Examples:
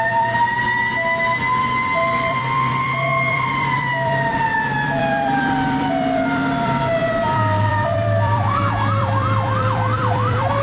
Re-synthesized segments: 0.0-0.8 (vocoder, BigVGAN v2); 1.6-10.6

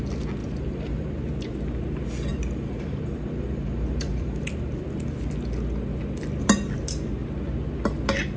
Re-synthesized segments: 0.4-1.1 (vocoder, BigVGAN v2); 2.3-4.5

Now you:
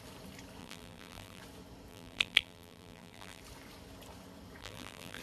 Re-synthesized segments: 0.6-1.4 (vocoder, BigVGAN v2); 1.9-3.4; 4.6-5.2